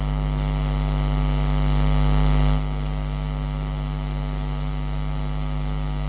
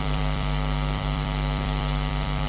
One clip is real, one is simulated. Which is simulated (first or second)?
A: second